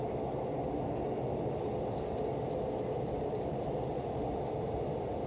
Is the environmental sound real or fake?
real